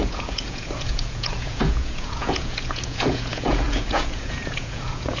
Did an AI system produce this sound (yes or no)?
yes